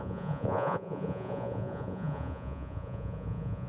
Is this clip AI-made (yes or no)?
yes